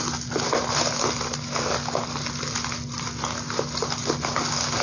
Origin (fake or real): real